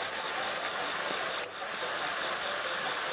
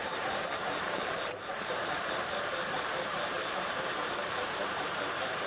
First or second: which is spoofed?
second